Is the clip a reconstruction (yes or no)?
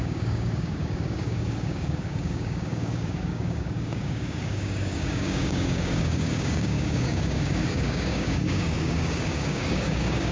yes